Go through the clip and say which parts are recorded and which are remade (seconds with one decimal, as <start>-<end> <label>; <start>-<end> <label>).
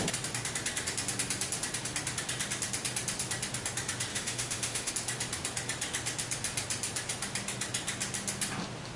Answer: 0.0-4.1 recorded; 4.1-4.9 remade; 4.9-9.0 recorded